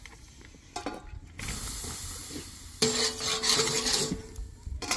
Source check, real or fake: real